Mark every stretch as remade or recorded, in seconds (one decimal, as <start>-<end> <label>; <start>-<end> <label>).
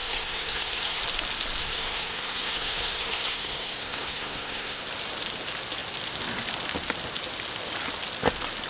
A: 0.0-1.0 remade; 1.0-1.6 recorded; 1.6-4.8 remade; 4.8-8.7 recorded